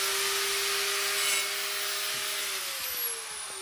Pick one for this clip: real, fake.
real